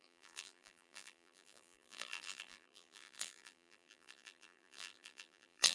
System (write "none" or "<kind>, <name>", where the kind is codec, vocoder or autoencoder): vocoder, BigVGAN v2